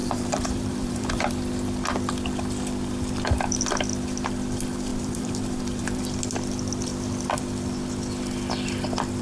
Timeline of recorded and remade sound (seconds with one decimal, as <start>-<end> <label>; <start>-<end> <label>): 0.0-1.3 remade; 1.3-4.9 recorded; 4.9-6.0 remade; 6.0-9.2 recorded